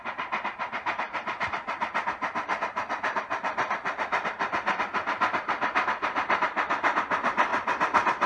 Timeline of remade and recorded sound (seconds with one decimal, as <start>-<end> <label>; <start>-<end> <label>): 0.0-8.3 recorded